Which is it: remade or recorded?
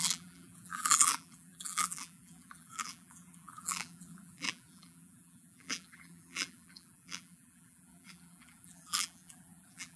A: remade